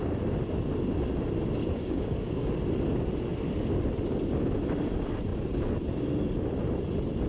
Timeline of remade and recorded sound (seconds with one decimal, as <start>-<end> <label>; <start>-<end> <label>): 0.0-1.6 recorded; 1.6-2.5 remade; 2.5-7.3 recorded